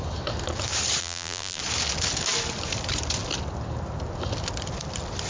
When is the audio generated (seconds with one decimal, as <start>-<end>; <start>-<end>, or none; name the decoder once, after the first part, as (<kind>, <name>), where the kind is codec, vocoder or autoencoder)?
1.0-1.6 (vocoder, BigVGAN v2)